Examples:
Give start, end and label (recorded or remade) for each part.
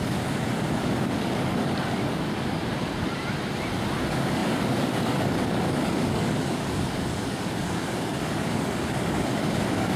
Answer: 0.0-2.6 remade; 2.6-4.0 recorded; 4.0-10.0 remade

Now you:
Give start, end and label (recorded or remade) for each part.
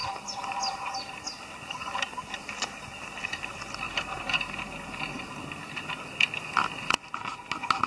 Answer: 0.0-7.9 recorded